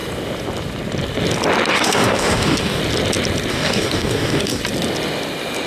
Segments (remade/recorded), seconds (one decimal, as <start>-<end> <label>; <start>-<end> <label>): 0.0-1.7 recorded; 1.7-2.8 remade; 2.8-3.5 recorded; 3.5-4.6 remade; 4.6-5.7 recorded